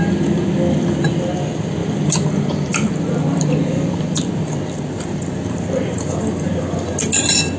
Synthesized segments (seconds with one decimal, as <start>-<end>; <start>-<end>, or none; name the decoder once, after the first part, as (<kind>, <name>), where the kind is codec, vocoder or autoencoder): none